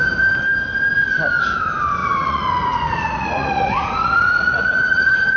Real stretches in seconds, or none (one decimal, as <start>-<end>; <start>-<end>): 0.0-2.0